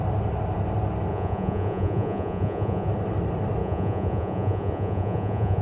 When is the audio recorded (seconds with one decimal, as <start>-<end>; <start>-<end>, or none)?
0.0-1.1; 2.9-3.6